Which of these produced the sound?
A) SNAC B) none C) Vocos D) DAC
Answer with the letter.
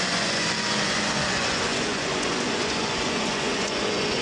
C